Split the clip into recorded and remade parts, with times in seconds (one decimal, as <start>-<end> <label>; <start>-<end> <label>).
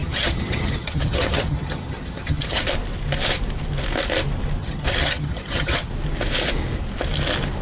0.0-2.6 remade; 2.6-4.6 recorded; 4.6-5.9 remade; 5.9-7.6 recorded